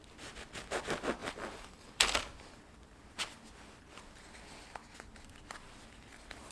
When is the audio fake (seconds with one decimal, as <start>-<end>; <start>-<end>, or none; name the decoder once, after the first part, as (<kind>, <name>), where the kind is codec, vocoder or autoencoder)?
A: 1.2-2.2 (vocoder, BigVGAN v2)